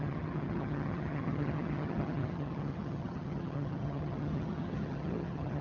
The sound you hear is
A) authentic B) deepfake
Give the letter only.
B